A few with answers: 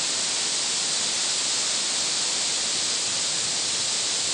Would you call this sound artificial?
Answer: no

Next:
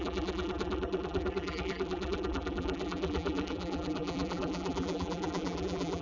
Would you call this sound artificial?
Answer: yes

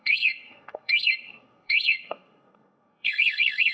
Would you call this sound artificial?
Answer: yes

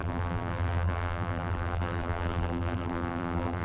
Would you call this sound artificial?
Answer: yes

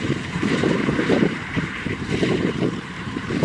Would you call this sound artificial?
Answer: yes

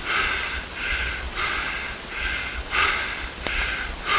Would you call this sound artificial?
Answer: no